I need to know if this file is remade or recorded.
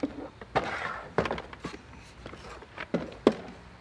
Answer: recorded